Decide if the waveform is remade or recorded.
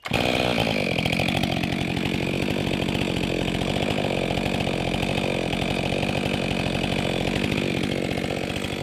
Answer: recorded